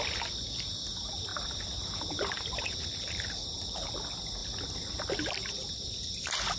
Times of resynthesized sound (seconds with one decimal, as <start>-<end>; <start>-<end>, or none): 1.3-3.9; 4.4-5.0